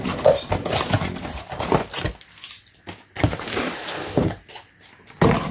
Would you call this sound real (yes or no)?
yes